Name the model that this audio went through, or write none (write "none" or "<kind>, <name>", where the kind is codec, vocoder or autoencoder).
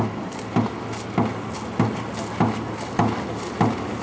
none